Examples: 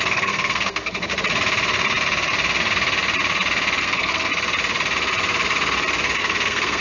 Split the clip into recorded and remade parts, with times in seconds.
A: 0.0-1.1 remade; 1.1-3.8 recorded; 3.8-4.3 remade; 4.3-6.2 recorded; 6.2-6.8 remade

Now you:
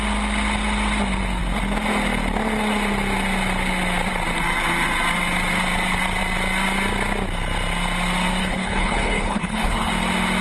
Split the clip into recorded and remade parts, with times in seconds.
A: 0.0-8.4 recorded; 8.4-9.9 remade; 9.9-10.4 recorded

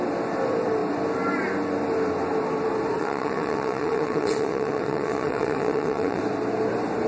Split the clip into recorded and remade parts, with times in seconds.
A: 0.0-3.0 recorded; 3.0-6.2 remade; 6.2-7.1 recorded

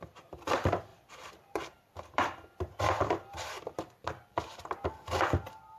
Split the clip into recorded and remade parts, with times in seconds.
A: 0.0-0.9 recorded; 0.9-4.4 remade; 4.4-5.8 recorded